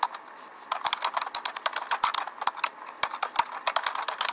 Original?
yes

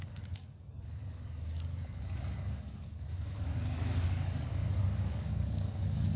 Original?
no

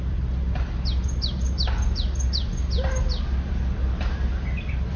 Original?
yes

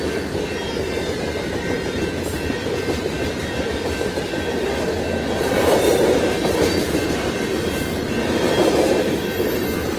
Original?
yes